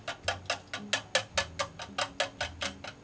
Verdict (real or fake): real